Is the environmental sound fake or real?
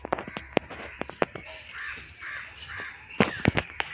real